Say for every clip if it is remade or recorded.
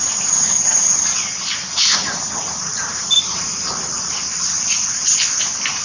recorded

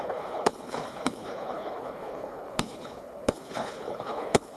remade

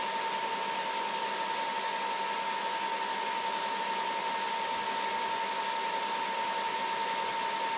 recorded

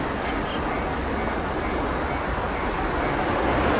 recorded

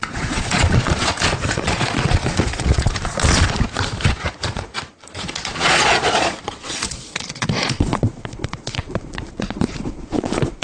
remade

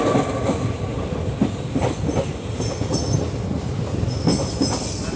recorded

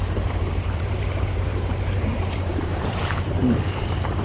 remade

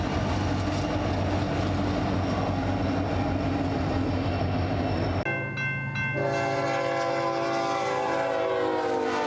recorded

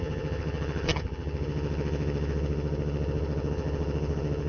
remade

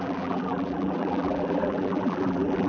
remade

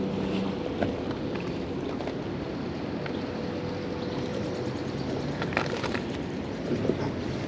recorded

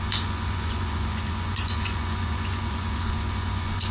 remade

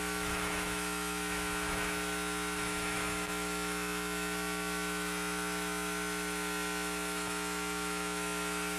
remade